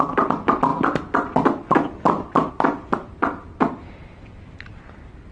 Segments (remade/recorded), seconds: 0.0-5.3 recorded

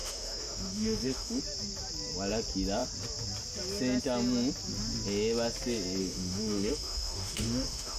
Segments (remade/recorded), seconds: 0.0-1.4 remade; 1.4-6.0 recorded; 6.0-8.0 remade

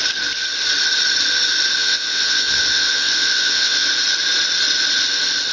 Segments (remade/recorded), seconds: 0.0-1.8 recorded; 1.8-3.9 remade; 3.9-5.5 recorded

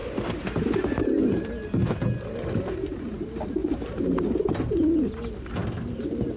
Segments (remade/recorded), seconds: 0.0-6.4 recorded

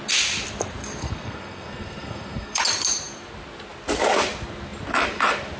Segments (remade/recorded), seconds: 0.0-1.0 recorded; 1.0-2.6 remade; 2.6-5.6 recorded

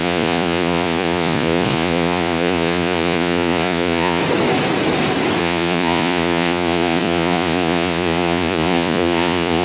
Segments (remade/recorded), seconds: 0.0-4.2 remade; 4.2-5.4 recorded; 5.4-9.6 remade

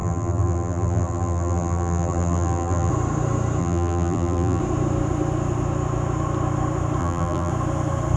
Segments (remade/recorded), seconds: 0.0-2.9 remade; 2.9-3.6 recorded; 3.6-4.6 remade; 4.6-7.0 recorded; 7.0-7.5 remade; 7.5-8.2 recorded